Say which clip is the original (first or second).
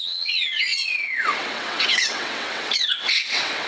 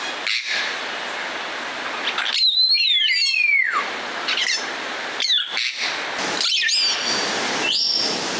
second